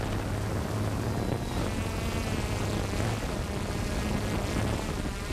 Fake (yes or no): no